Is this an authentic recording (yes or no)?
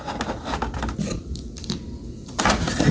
yes